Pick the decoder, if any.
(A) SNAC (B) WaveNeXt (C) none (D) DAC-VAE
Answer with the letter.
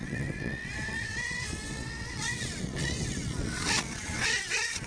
B